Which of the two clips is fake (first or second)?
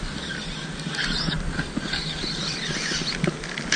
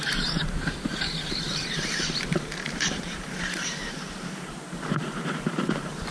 second